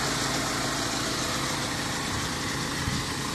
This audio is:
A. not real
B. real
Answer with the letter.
B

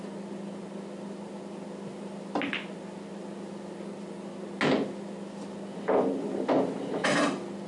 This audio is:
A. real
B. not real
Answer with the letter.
A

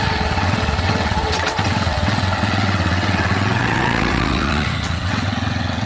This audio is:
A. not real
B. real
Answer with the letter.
A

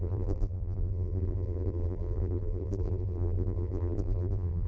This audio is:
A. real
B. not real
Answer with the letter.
B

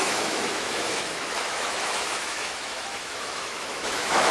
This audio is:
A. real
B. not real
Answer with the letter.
B